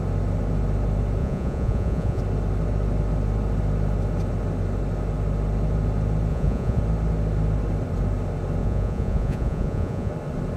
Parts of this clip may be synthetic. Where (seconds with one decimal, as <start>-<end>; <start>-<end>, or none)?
1.2-2.2; 6.3-6.8; 8.6-10.1